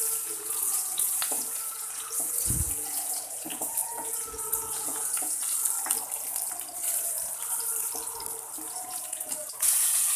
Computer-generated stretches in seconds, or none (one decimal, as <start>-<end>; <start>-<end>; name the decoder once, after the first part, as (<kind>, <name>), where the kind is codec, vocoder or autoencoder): 0.0-5.4 (vocoder, Vocos); 8.7-10.2